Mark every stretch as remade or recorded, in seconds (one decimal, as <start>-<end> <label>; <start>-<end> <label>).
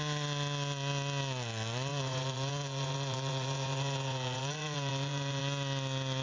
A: 0.0-1.9 recorded; 1.9-5.4 remade; 5.4-6.2 recorded